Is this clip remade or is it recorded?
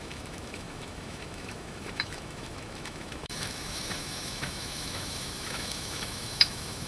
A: remade